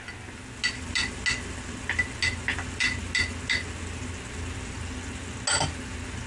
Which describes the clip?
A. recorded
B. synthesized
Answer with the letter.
A